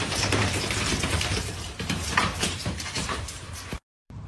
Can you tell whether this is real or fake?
fake